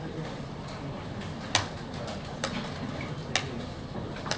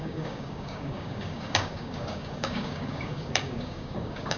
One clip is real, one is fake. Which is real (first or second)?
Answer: first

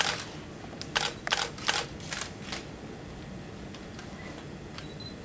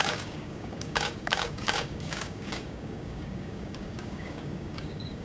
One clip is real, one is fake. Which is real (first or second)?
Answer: first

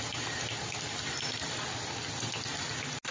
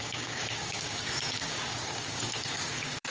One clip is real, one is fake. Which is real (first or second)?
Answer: first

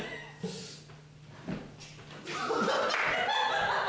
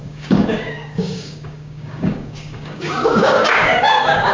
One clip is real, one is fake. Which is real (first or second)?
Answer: first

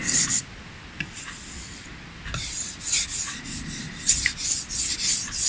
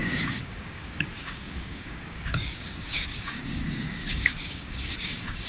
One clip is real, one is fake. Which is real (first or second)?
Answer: first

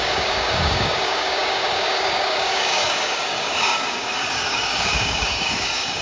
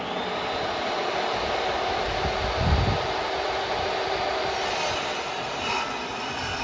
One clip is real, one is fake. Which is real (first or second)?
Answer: second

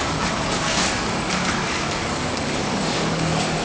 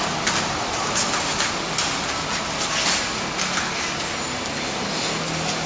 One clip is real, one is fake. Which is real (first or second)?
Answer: second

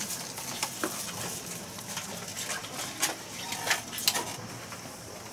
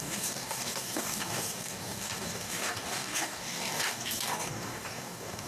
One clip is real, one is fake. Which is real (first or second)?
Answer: first